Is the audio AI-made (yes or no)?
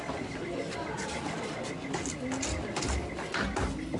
no